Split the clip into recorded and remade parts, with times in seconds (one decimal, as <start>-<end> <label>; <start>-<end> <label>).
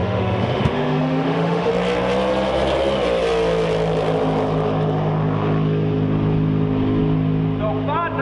0.0-1.7 remade; 1.7-8.2 recorded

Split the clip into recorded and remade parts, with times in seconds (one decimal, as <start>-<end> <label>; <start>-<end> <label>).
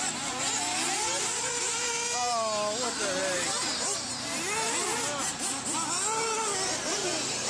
0.0-7.5 recorded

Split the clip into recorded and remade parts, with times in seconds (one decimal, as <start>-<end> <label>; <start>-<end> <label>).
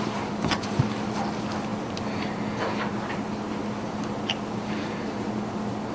0.0-5.9 recorded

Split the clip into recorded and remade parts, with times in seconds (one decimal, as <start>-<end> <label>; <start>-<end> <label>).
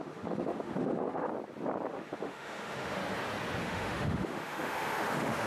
0.0-1.3 remade; 1.3-1.9 recorded; 1.9-3.0 remade; 3.0-3.6 recorded; 3.6-5.5 remade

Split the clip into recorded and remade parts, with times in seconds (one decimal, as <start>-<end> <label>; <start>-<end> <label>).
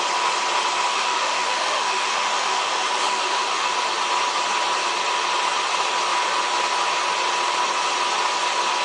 0.0-0.9 recorded; 0.9-3.7 remade; 3.7-8.8 recorded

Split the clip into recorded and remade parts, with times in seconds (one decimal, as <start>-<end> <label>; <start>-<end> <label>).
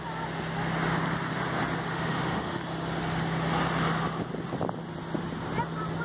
0.0-1.9 recorded; 1.9-2.6 remade; 2.6-6.0 recorded